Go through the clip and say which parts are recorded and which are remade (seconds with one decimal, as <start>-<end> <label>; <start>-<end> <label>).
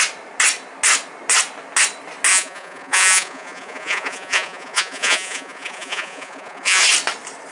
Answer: 0.0-2.3 recorded; 2.3-6.8 remade; 6.8-7.5 recorded